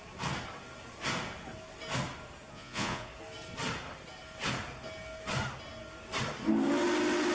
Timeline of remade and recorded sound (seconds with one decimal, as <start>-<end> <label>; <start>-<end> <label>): 0.0-2.5 recorded; 2.5-3.1 remade; 3.1-7.3 recorded